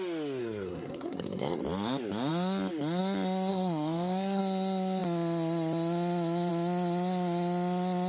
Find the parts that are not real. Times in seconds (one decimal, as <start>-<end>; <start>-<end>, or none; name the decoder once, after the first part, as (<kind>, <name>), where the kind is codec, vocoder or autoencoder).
0.4-1.6 (codec, SNAC); 3.5-4.4